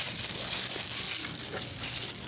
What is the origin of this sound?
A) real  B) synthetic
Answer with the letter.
A